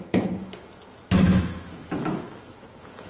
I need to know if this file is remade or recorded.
remade